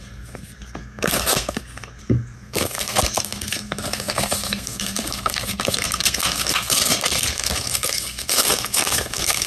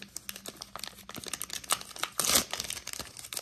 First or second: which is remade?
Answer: first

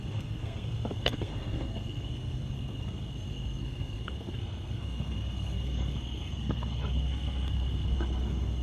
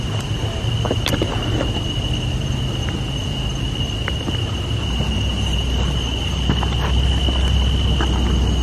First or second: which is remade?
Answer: first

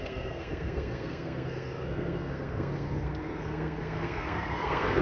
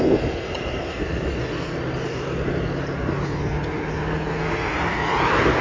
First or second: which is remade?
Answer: first